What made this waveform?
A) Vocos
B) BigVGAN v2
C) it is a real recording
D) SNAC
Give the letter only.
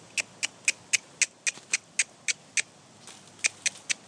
C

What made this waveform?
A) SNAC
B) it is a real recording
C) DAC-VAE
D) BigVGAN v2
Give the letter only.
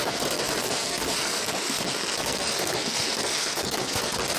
A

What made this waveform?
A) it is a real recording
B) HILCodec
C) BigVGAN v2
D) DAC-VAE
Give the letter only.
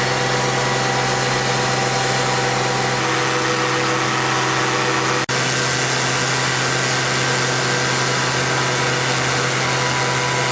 A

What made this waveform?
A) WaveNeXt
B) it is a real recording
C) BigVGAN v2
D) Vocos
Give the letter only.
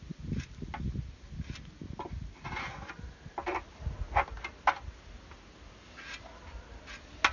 B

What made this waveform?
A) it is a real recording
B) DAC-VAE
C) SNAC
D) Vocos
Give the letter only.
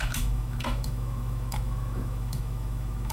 B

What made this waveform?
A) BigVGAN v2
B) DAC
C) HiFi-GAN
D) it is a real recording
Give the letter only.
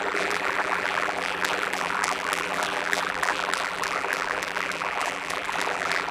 A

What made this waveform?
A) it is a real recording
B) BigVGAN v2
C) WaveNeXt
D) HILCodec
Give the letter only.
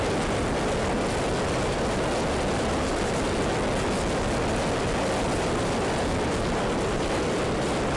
A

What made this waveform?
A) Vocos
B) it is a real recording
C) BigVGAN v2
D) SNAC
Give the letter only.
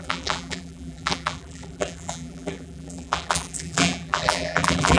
C